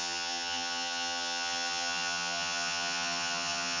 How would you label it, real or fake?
fake